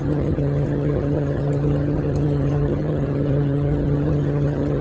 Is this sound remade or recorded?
remade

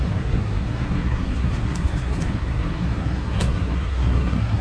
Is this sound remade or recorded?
remade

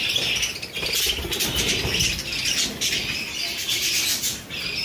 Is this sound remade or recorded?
recorded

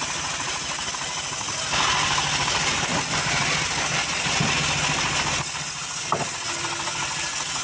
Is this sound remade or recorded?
recorded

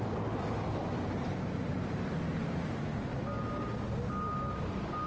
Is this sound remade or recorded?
recorded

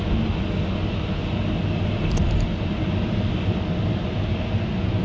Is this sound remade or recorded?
recorded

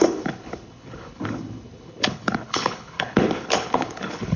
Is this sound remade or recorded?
remade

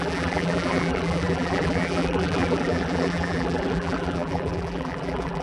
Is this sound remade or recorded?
remade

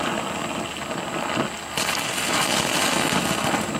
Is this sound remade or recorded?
recorded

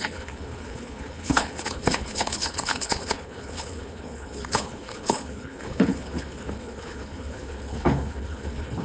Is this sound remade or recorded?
remade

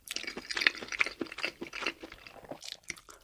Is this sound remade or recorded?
remade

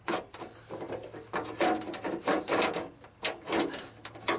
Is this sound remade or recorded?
recorded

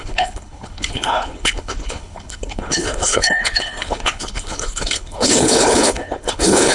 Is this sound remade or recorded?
remade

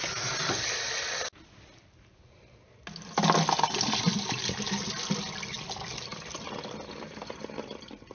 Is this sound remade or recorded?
recorded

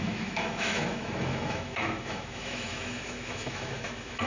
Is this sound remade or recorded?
remade